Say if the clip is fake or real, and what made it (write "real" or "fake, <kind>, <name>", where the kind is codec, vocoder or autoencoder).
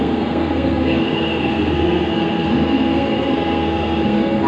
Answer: fake, codec, SNAC